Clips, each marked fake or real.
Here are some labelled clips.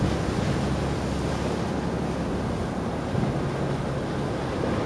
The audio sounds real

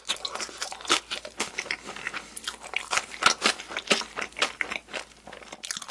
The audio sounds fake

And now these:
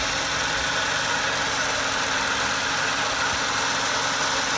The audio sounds real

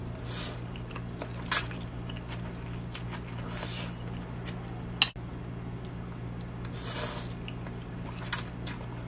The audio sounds real